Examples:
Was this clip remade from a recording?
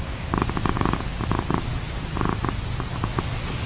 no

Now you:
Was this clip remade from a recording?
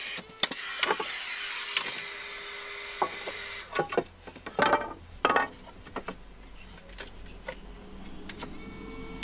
no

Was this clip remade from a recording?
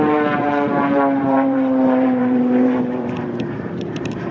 yes